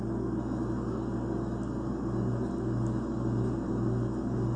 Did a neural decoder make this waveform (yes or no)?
no